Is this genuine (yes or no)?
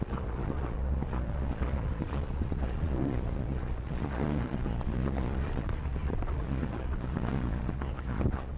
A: no